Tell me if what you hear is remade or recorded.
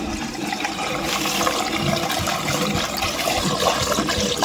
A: remade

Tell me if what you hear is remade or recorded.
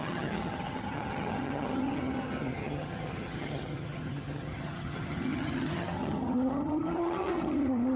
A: remade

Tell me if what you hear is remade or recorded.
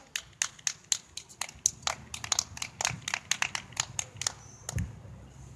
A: recorded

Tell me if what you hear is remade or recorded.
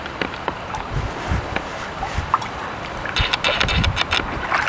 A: recorded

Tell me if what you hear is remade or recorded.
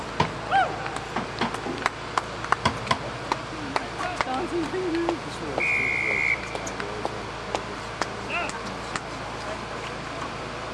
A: recorded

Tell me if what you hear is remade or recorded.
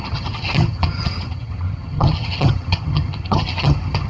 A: remade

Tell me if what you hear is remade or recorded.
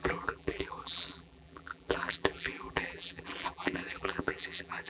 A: remade